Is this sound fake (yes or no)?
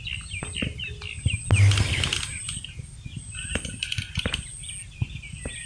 no